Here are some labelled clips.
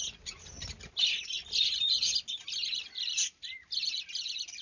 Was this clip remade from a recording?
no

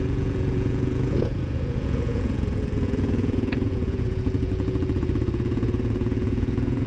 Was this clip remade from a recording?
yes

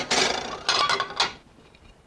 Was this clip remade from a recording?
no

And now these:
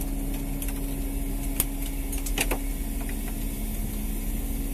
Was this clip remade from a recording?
no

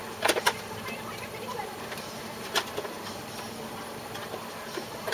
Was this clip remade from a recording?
no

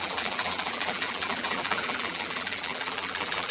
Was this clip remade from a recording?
yes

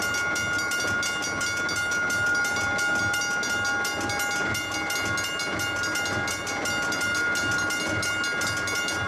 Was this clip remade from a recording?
no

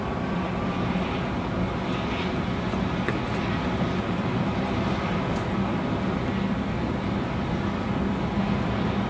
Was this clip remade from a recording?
no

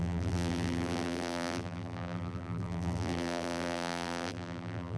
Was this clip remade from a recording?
yes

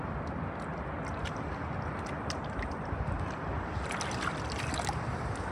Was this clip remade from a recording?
no